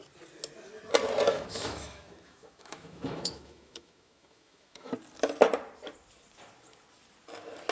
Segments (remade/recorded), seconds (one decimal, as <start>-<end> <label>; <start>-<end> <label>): 0.0-1.3 recorded; 1.3-4.9 remade; 4.9-7.7 recorded